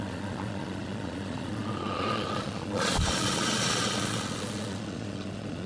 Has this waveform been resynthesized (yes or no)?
yes